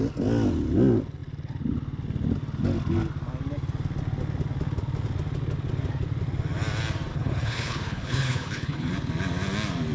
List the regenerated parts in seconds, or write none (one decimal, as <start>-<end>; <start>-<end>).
7.1-8.9

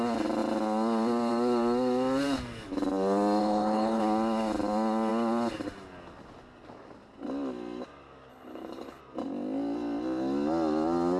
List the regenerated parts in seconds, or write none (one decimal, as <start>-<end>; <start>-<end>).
3.4-4.0; 8.3-9.0

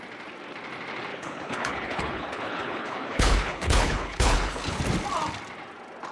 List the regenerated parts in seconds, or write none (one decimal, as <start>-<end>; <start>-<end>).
1.1-4.8

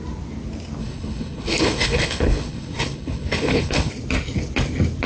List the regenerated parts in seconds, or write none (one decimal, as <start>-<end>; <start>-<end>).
0.8-3.9

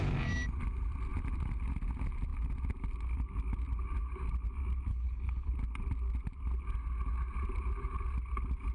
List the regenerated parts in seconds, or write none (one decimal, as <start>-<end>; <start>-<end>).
4.9-5.5

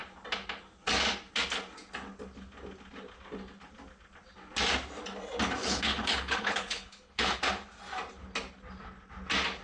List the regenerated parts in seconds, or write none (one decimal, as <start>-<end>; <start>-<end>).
5.6-7.4

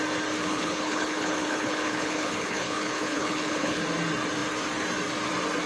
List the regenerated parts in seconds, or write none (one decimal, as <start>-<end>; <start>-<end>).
0.4-3.8